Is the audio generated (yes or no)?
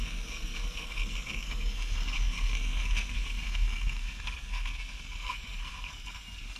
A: yes